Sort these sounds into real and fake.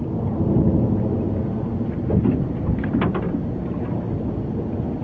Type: real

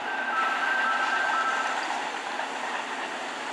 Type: real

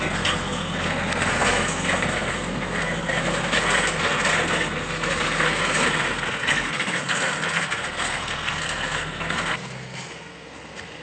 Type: fake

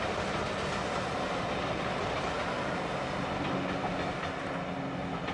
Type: real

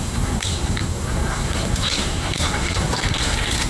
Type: fake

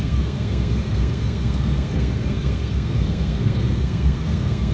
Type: fake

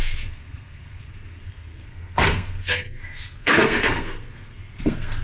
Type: fake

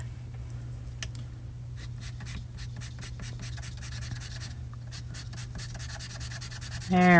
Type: real